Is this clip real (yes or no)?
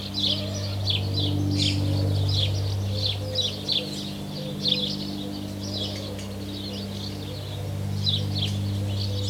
yes